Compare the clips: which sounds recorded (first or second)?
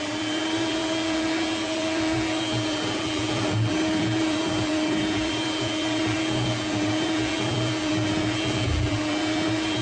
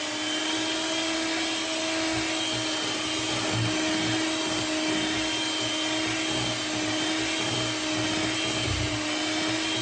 second